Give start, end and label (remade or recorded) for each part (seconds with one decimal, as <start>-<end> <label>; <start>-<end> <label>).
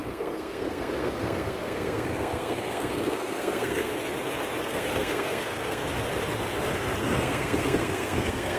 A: 0.0-3.9 remade; 3.9-4.6 recorded; 4.6-5.8 remade; 5.8-7.0 recorded; 7.0-8.6 remade